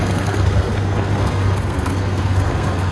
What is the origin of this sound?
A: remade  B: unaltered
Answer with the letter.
A